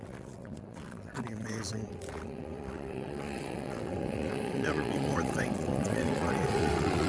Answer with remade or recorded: remade